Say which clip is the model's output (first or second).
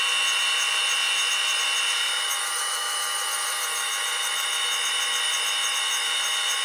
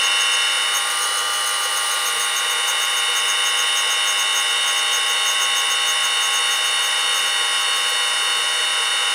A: first